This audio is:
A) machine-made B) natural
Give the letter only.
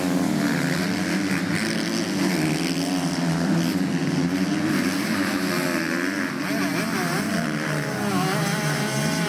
B